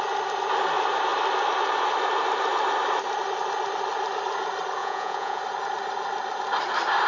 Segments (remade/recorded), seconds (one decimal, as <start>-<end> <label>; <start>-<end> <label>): 0.0-4.8 recorded; 4.8-5.4 remade; 5.4-7.1 recorded